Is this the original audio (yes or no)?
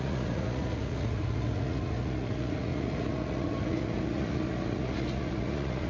no